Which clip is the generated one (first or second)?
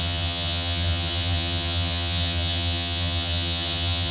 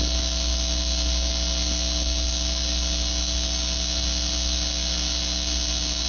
first